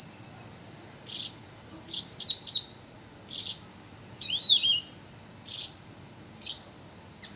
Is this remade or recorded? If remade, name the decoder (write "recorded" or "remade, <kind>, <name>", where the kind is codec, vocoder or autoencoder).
recorded